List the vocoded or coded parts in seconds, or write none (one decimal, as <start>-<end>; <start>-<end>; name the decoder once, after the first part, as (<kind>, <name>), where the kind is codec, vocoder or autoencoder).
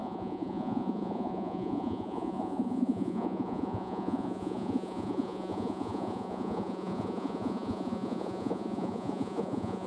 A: 0.0-9.9 (vocoder, Vocos)